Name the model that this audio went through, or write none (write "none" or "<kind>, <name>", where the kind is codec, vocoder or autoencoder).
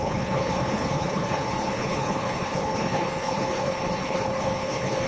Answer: codec, HILCodec